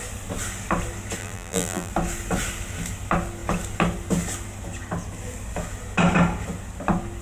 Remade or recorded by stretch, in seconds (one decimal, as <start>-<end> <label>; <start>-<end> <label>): 0.0-1.2 recorded; 1.2-1.9 remade; 1.9-7.2 recorded